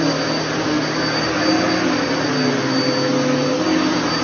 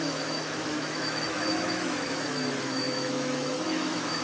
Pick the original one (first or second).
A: first